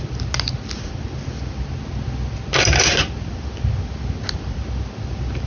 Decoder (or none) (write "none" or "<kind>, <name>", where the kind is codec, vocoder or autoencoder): none